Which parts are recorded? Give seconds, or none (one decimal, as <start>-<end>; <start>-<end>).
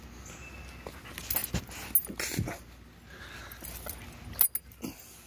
0.0-5.3